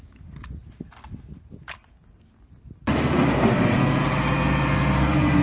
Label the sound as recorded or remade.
recorded